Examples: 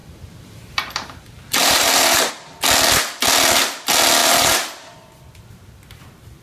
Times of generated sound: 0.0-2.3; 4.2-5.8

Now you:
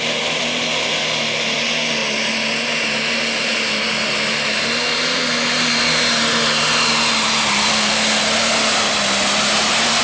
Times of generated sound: 7.7-8.2

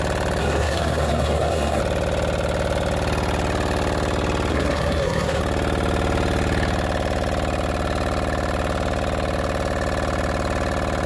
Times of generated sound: 0.4-1.8; 4.5-5.4

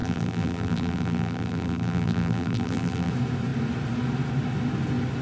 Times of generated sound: 0.0-3.1

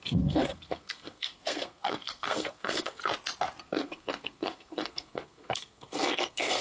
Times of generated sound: 0.0-3.0; 3.6-6.6